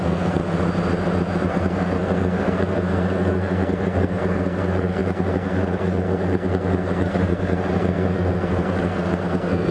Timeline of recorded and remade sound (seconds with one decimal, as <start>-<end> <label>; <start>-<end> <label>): 0.0-0.4 remade; 0.4-1.5 recorded; 1.5-9.7 remade